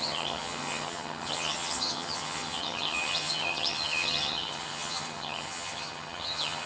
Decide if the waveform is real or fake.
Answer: fake